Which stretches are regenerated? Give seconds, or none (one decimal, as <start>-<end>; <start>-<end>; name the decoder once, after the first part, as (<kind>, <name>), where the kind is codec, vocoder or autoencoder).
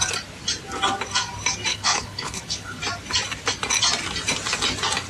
1.7-2.8 (codec, HILCodec)